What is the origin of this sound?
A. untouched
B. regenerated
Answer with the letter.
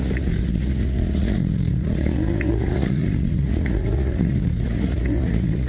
B